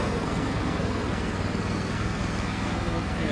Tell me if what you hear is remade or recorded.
remade